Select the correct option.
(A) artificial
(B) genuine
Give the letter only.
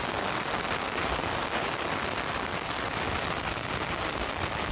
B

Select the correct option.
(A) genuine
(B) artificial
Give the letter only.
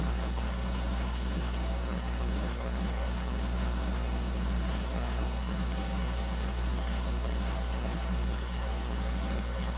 B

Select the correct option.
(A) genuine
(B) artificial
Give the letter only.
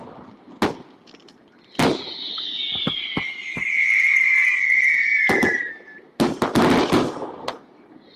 A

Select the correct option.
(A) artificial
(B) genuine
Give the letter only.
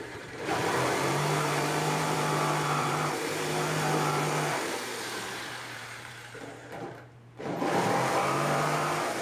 A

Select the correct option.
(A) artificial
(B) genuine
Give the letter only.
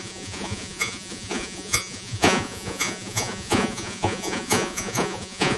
A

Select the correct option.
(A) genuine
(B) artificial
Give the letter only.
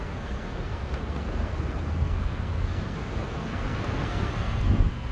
B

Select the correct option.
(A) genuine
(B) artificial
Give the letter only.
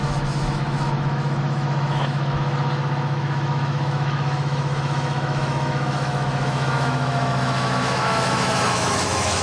B